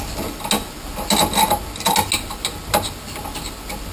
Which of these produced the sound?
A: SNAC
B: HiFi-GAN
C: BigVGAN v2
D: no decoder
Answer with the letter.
D